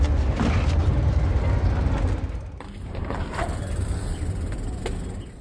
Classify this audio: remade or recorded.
recorded